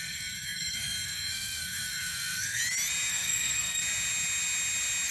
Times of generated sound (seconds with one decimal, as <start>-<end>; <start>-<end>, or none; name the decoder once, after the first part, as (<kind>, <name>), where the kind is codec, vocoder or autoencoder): 0.0-2.6 (codec, SNAC); 3.1-3.8